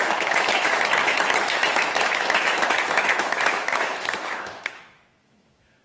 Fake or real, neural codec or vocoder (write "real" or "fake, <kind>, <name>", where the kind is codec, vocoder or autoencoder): fake, autoencoder, DAC-VAE